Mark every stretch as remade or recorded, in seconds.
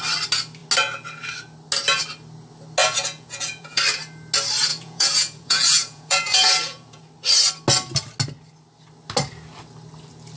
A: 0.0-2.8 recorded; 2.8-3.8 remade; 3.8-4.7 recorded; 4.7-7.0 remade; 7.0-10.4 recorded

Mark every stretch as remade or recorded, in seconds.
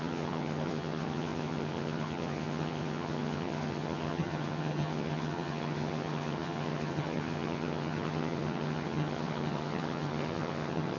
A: 0.0-11.0 remade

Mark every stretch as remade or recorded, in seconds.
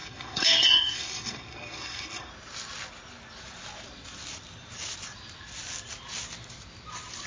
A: 0.0-2.3 remade; 2.3-7.3 recorded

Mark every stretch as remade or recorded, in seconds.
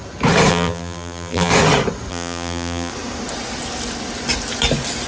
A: 0.0-0.5 recorded; 0.5-1.5 remade; 1.5-2.1 recorded; 2.1-2.9 remade; 2.9-5.1 recorded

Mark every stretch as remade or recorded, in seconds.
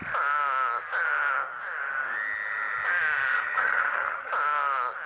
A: 0.0-3.3 recorded; 3.3-4.3 remade; 4.3-5.1 recorded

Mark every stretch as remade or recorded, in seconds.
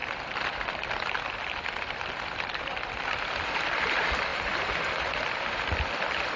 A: 0.0-4.3 remade; 4.3-4.9 recorded; 4.9-6.4 remade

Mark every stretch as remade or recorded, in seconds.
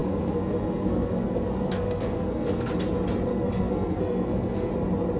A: 0.0-2.7 remade; 2.7-3.3 recorded; 3.3-4.7 remade; 4.7-5.2 recorded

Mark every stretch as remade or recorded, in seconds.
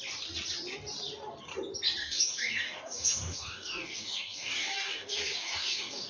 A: 0.0-2.0 recorded; 2.0-6.1 remade